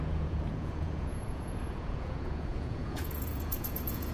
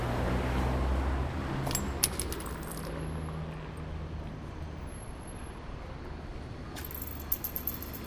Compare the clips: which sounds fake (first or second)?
first